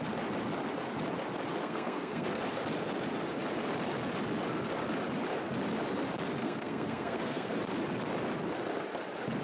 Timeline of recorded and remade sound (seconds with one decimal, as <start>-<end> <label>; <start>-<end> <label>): 0.0-1.6 recorded; 1.6-2.4 remade; 2.4-6.4 recorded; 6.4-7.5 remade; 7.5-9.4 recorded